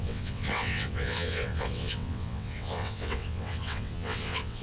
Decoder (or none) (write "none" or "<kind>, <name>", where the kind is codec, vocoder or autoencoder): vocoder, WaveNeXt